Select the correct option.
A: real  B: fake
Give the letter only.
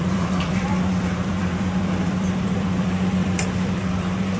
B